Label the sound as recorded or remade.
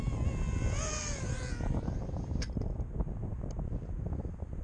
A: recorded